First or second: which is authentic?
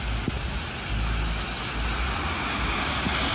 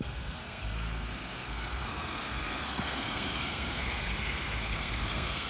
first